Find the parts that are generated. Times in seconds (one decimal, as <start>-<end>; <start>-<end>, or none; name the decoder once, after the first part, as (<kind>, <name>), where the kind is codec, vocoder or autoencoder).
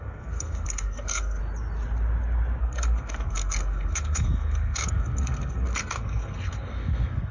0.0-1.4 (codec, SNAC); 2.6-7.3